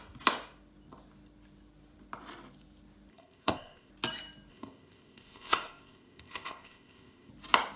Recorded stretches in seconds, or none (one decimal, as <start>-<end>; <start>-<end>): 0.0-3.1; 3.9-4.5; 7.3-7.8